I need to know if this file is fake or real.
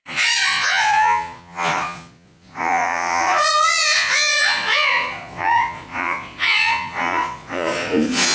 fake